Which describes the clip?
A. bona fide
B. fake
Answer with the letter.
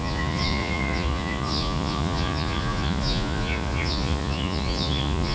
B